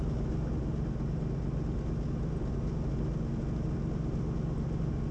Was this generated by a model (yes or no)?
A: no